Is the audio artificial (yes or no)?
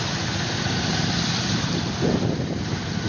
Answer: no